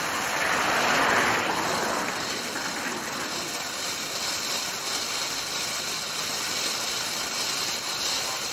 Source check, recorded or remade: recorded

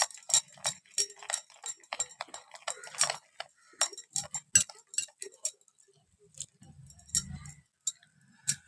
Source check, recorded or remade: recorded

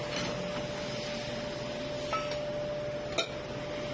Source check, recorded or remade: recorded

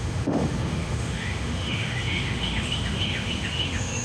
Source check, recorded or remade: remade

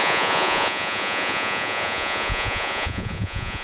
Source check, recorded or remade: remade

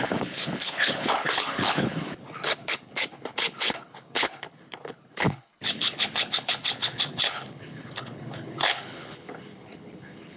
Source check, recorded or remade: remade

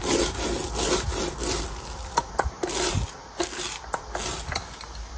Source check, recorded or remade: recorded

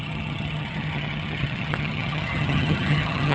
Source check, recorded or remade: remade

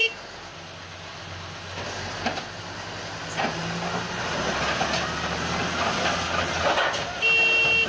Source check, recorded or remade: recorded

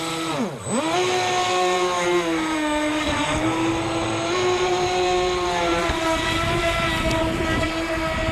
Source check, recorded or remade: recorded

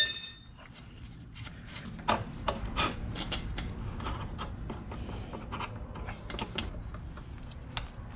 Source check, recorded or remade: recorded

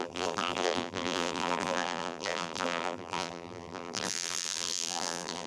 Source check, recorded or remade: remade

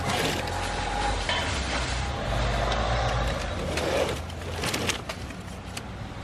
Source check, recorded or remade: recorded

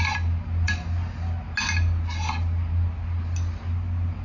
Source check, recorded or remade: recorded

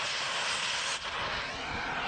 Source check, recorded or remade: recorded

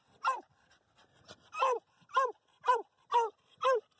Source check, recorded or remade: recorded